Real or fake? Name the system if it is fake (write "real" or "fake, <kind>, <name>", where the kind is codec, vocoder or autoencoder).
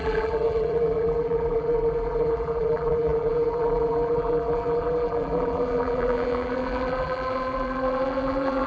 fake, vocoder, BigVGAN v2